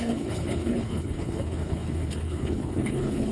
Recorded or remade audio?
remade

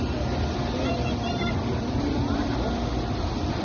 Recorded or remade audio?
remade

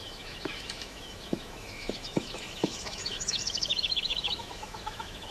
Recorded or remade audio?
remade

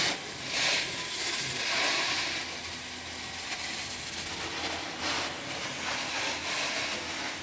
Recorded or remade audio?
recorded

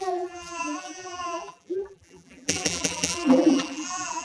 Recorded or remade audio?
remade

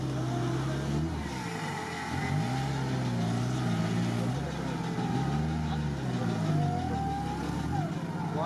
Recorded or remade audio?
recorded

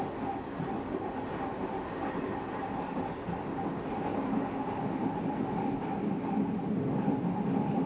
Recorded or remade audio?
recorded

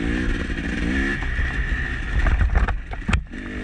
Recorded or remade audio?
recorded